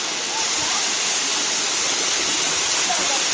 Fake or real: real